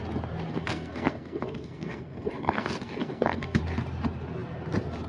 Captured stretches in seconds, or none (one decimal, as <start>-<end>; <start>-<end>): 0.0-0.5; 3.6-5.1